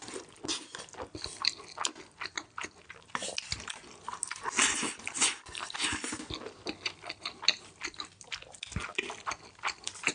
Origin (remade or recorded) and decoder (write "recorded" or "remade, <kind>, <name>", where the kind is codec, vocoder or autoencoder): recorded